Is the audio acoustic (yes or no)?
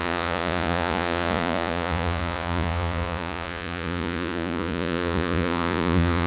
no